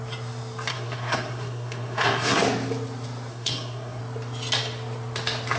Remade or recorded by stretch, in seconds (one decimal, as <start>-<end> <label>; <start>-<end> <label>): 0.0-0.7 recorded; 0.7-2.4 remade; 2.4-3.3 recorded; 3.3-4.0 remade; 4.0-5.6 recorded